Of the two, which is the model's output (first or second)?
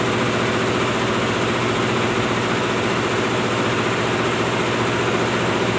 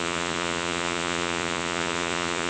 second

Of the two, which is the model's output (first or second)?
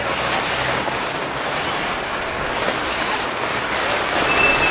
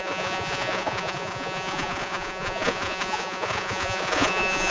second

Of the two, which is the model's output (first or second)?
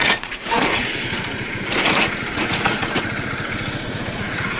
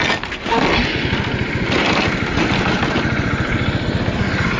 first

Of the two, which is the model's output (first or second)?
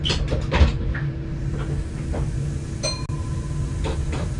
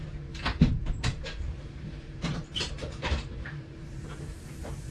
second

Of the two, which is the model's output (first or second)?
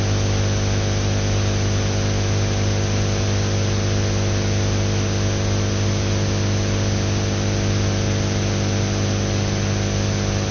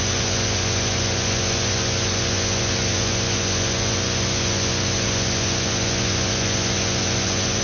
second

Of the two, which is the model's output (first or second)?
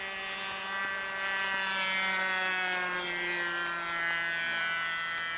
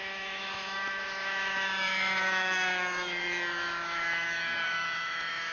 second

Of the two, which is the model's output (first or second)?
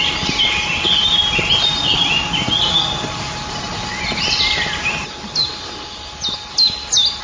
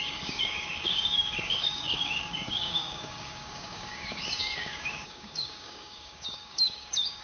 second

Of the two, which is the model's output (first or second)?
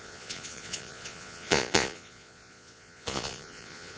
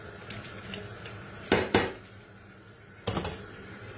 first